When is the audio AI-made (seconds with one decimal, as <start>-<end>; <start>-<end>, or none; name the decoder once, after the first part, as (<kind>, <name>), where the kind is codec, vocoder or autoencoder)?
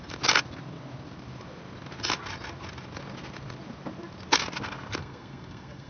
5.0-5.9 (codec, SNAC)